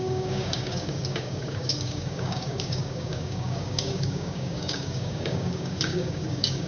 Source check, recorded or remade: remade